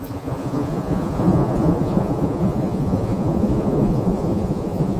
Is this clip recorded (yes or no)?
no